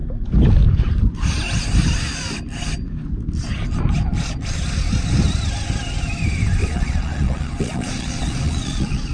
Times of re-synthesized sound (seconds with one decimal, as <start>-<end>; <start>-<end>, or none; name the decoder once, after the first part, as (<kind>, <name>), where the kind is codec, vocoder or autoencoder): 6.6-9.1 (vocoder, Vocos)